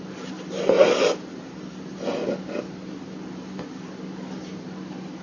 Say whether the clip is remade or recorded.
recorded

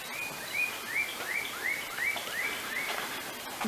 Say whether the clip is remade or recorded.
recorded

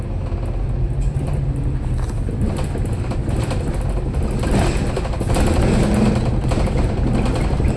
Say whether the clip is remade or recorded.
recorded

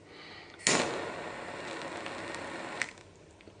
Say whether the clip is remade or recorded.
recorded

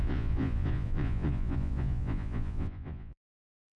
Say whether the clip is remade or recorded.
remade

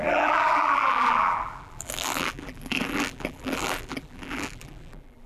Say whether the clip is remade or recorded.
remade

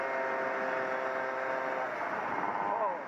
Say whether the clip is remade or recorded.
recorded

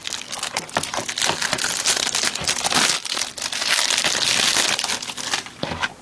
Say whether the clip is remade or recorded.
recorded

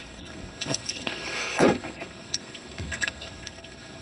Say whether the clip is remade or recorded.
remade